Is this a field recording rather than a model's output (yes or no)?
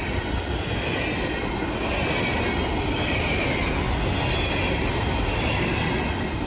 yes